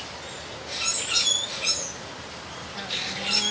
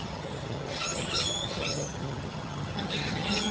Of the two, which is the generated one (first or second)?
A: second